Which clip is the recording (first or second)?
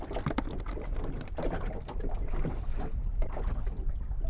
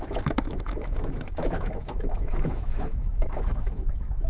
first